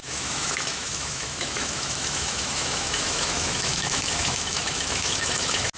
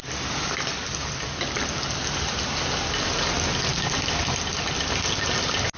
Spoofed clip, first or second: first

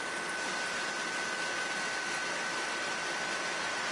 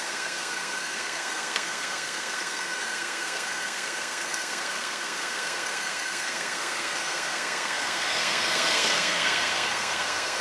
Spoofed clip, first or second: second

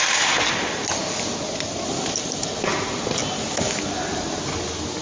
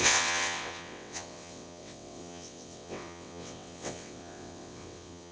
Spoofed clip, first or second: second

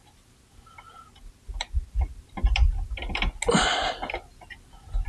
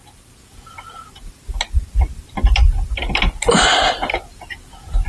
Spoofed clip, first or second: second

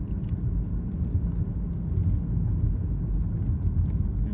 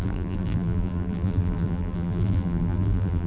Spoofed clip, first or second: second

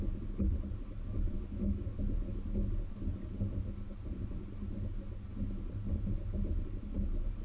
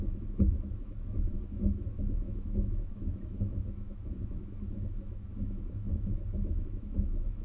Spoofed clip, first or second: second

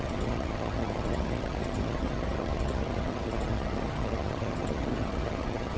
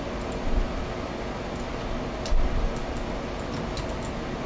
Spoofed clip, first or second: first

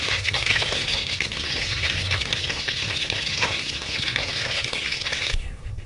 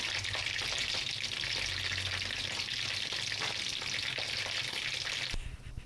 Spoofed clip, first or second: first